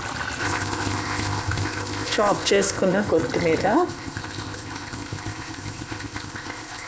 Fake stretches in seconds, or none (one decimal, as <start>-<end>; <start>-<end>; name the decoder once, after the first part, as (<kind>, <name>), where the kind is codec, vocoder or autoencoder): 0.4-3.1 (codec, ZipCodec); 3.6-6.9